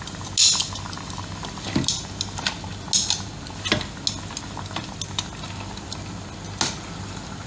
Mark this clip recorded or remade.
recorded